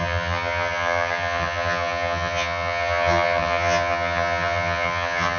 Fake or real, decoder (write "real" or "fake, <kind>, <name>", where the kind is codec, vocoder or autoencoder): fake, vocoder, HiFi-GAN